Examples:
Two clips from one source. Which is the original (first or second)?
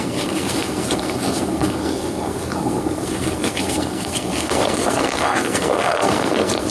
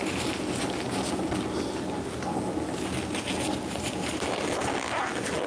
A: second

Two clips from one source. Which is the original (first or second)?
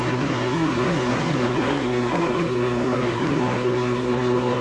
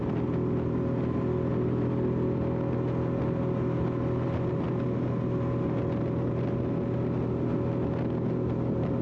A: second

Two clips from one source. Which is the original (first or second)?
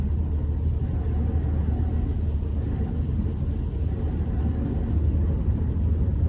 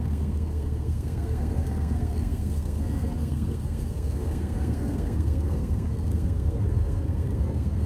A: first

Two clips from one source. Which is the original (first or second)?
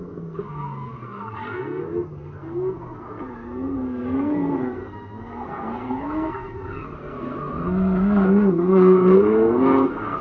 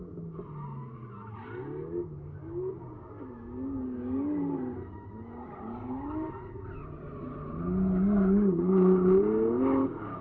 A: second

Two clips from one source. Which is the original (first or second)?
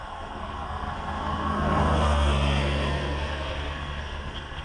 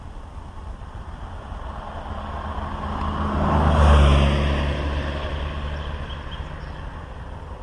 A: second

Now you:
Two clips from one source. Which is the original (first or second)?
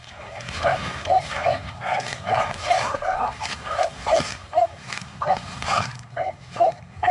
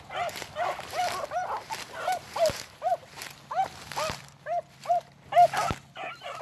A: second